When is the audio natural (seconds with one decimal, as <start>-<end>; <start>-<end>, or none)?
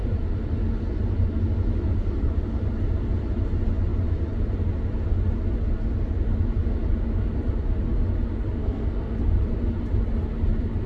0.0-8.6; 9.2-10.9